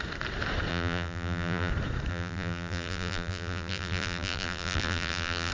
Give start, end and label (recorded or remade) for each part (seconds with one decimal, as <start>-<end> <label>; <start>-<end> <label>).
0.0-0.7 recorded; 0.7-1.7 remade; 1.7-2.1 recorded; 2.1-5.5 remade